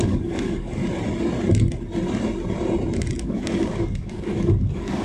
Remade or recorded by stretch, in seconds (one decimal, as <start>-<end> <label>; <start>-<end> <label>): 0.0-0.8 remade; 0.8-3.2 recorded; 3.2-5.0 remade